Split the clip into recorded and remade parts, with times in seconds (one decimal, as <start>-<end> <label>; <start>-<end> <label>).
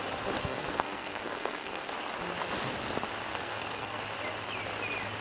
0.0-0.4 recorded; 0.4-1.9 remade; 1.9-3.3 recorded; 3.3-4.0 remade; 4.0-5.2 recorded